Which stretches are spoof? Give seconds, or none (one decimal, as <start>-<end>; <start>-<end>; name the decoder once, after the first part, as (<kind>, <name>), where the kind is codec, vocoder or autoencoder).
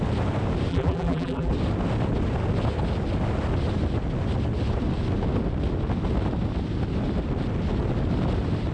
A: 0.7-1.5 (vocoder, BigVGAN v2)